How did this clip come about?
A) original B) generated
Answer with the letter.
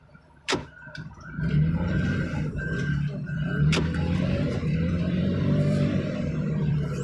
B